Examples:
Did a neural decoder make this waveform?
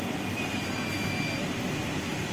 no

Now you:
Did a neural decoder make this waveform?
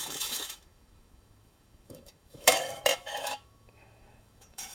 yes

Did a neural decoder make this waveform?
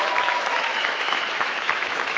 yes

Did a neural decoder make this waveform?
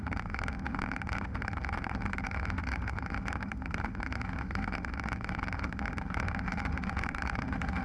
yes